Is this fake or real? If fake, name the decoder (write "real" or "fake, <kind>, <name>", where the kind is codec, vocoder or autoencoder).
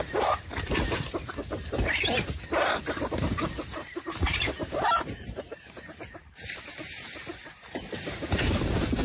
fake, vocoder, BigVGAN v2